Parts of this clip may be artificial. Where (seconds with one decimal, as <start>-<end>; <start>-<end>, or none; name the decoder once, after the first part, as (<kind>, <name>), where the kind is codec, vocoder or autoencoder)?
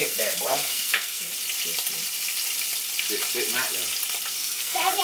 0.0-1.3 (codec, SNAC); 4.3-5.0